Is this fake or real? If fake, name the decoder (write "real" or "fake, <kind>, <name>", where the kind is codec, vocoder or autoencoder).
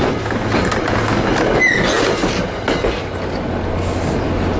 real